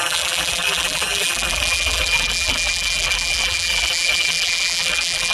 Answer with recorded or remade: remade